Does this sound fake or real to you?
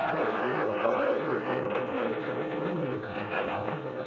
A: fake